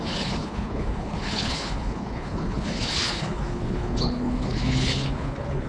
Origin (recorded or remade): remade